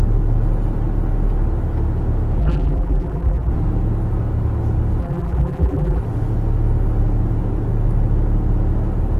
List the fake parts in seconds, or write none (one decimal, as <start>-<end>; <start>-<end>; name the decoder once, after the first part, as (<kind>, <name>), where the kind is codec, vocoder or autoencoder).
2.4-3.5 (vocoder, BigVGAN v2); 5.0-6.0